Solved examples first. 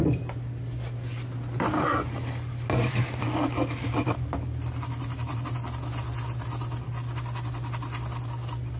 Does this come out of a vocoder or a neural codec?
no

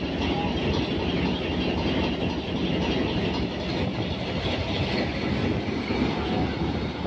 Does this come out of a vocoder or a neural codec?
no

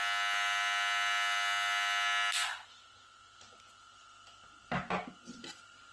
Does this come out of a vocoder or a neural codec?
no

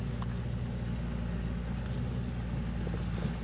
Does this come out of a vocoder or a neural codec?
no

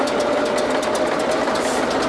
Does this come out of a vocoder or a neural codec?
no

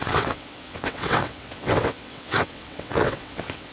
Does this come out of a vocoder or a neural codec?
yes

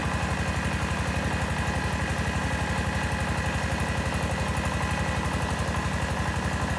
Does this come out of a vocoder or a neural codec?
no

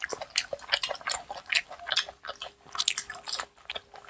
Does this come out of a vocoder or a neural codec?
no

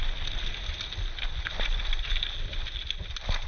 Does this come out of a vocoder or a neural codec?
no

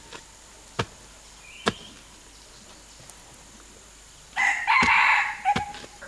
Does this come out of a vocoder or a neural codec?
no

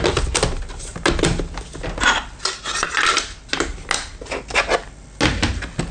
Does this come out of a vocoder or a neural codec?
no